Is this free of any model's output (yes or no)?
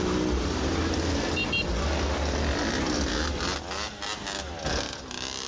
yes